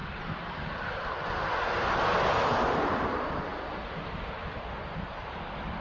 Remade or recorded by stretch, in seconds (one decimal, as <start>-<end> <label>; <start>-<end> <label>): 0.0-5.8 recorded

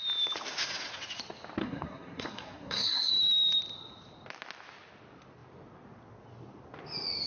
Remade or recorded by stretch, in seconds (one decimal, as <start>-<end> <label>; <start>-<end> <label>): 0.0-1.6 recorded; 1.6-3.1 remade; 3.1-7.3 recorded